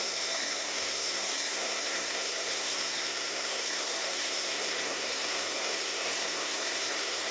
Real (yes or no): no